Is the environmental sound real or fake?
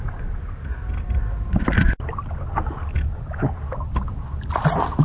real